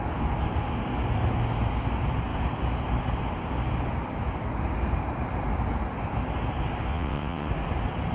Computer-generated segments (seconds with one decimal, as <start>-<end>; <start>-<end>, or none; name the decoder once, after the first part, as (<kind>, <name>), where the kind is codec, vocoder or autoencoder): 6.9-7.5 (vocoder, WaveNeXt)